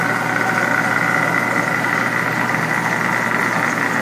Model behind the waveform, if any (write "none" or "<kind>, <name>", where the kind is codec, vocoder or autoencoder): none